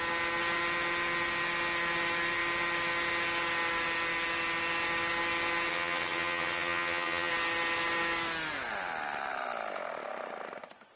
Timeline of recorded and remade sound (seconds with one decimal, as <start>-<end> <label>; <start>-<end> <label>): 0.0-5.7 recorded; 5.7-7.3 remade; 7.3-11.0 recorded